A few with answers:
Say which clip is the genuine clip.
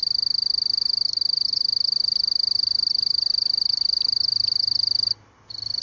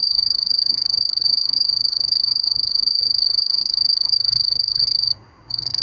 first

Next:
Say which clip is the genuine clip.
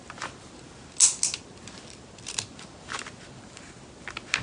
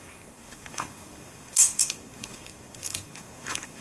first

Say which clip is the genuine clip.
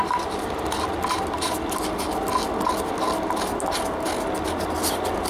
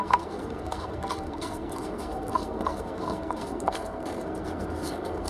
first